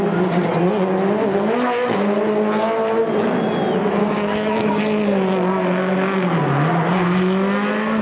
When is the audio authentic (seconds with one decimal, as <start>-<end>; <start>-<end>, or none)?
0.0-4.0; 4.8-8.0

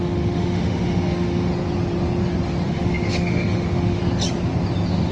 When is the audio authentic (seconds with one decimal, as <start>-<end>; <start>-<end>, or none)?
1.5-2.7; 4.0-5.1

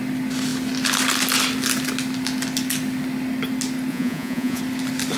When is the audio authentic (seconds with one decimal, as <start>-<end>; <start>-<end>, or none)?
0.0-3.9; 4.6-5.2

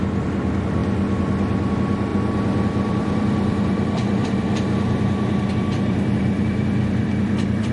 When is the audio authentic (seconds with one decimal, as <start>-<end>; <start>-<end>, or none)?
0.8-1.7